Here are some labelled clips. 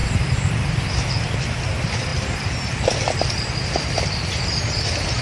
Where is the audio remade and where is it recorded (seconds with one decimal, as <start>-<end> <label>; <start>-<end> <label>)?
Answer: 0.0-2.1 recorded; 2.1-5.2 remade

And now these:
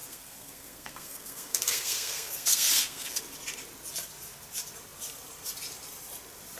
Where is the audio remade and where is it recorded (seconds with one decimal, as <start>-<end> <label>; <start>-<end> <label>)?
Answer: 0.0-3.2 remade; 3.2-6.6 recorded

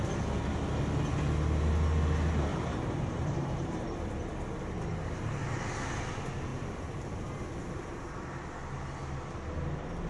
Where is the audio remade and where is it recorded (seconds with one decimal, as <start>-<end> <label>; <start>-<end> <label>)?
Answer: 0.0-2.5 recorded; 2.5-4.1 remade; 4.1-6.5 recorded; 6.5-7.4 remade; 7.4-10.1 recorded

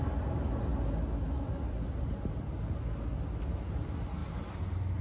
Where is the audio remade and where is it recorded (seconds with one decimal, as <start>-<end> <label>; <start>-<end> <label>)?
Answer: 0.0-5.0 recorded

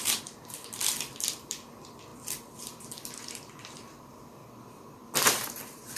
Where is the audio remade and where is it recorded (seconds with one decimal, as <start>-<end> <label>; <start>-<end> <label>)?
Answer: 0.0-4.4 remade; 4.4-5.6 recorded; 5.6-6.0 remade

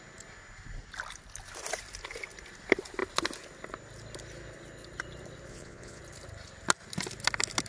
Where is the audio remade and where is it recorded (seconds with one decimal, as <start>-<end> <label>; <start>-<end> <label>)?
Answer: 0.0-5.5 recorded; 5.5-6.0 remade; 6.0-7.7 recorded

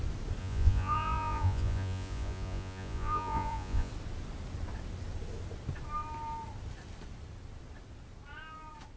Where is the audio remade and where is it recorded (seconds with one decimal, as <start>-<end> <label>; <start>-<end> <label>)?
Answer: 0.0-0.4 recorded; 0.4-3.9 remade; 3.9-9.0 recorded

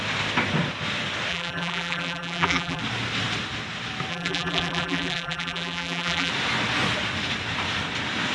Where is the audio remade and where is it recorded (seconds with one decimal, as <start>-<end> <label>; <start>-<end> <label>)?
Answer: 0.0-1.3 recorded; 1.3-2.8 remade; 2.8-4.1 recorded; 4.1-6.3 remade; 6.3-8.3 recorded